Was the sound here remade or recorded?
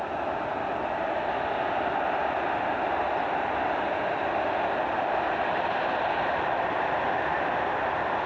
recorded